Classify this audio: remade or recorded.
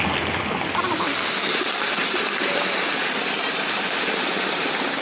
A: recorded